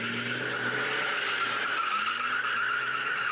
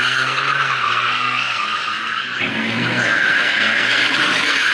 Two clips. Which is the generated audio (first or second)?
second